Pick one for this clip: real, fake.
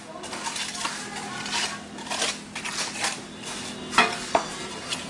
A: real